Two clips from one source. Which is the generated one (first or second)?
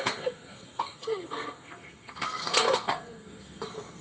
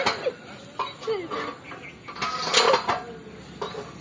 first